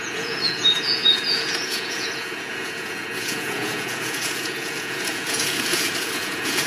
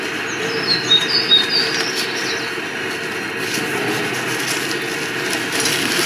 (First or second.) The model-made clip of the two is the first